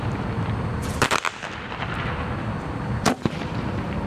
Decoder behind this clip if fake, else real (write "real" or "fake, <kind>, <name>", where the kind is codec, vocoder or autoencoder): fake, vocoder, BigVGAN v2